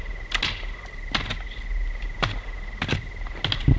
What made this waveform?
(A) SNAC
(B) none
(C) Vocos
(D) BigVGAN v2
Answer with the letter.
B